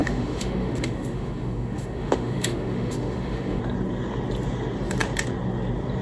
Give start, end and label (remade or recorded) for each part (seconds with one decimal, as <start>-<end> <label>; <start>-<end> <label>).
0.0-3.6 remade; 3.6-6.0 recorded